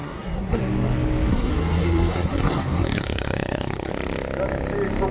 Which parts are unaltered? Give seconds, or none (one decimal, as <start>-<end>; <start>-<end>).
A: 0.6-1.3; 3.9-5.1